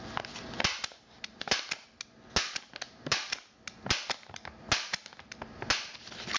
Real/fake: real